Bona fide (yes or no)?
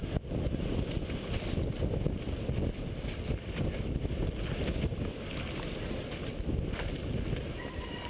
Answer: yes